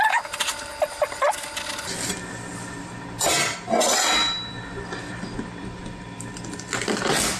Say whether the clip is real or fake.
real